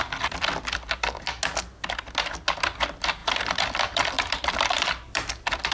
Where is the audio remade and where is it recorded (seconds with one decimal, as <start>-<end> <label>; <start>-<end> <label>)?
0.0-1.3 remade; 1.3-2.6 recorded; 2.6-5.7 remade